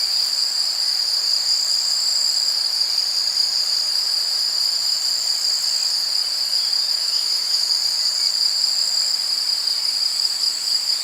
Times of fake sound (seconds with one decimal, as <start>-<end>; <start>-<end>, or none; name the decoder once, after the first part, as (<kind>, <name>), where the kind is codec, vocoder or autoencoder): 7.0-7.7 (autoencoder, DAC-VAE)